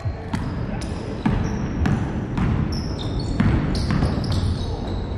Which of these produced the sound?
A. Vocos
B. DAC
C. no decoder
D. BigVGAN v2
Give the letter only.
C